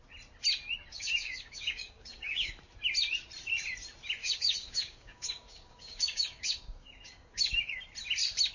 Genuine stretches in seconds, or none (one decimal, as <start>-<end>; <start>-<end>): 0.0-0.9; 2.5-4.2; 7.8-8.5